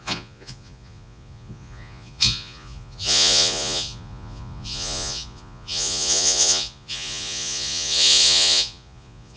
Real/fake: fake